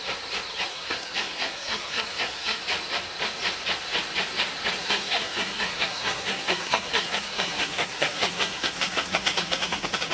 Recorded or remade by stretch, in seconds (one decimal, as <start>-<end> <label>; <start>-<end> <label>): 0.0-0.7 recorded; 0.7-2.6 remade; 2.6-4.8 recorded; 4.8-10.1 remade